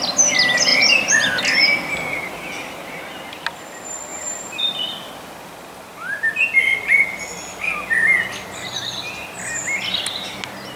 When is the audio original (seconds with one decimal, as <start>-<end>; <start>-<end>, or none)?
0.0-0.7; 1.4-4.1; 4.8-10.8